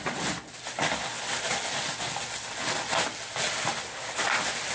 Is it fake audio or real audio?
real